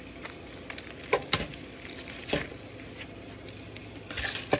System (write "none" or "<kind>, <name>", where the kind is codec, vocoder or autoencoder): none